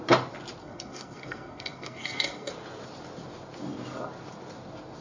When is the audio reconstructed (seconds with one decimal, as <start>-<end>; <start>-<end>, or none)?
0.6-2.5